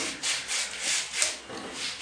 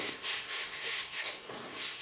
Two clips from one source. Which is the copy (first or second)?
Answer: second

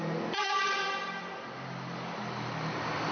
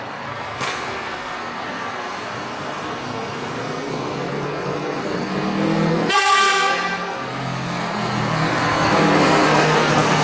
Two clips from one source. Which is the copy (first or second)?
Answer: second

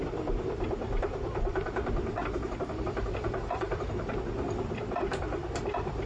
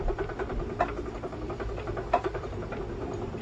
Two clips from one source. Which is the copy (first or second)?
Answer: first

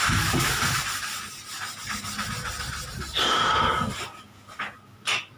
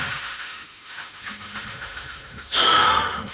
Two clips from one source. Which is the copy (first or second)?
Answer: second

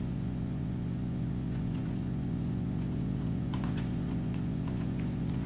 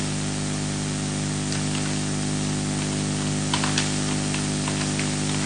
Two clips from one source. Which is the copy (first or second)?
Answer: first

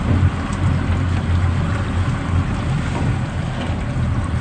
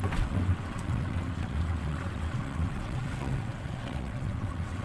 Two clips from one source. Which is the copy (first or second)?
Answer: second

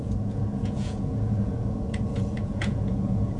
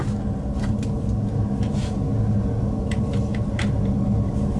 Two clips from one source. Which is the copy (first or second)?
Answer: first